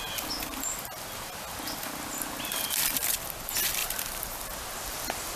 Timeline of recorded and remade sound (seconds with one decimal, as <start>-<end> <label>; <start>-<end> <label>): 0.0-3.8 recorded; 3.8-4.4 remade; 4.4-5.4 recorded